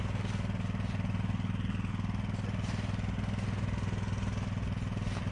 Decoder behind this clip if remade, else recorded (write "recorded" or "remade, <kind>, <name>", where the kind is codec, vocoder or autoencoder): recorded